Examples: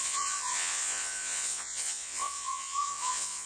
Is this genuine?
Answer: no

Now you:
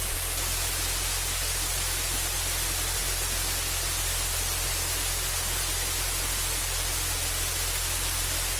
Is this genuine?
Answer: yes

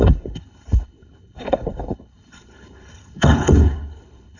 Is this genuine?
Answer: no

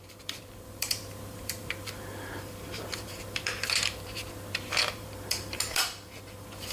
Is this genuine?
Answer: no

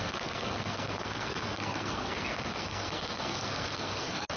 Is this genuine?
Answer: no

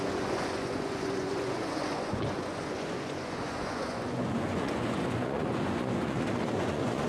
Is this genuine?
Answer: no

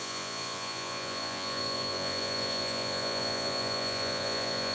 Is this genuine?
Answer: no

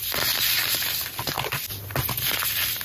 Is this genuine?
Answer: yes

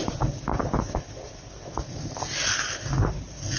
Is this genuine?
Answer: yes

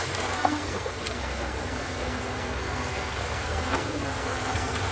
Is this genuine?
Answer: no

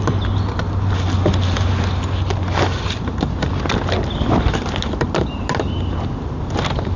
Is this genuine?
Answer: yes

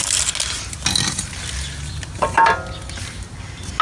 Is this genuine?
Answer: yes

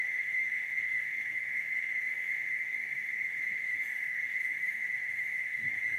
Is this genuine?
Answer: no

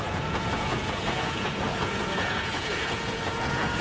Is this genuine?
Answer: no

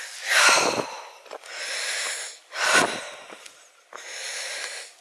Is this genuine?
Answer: yes